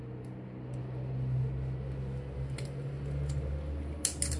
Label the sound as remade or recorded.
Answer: recorded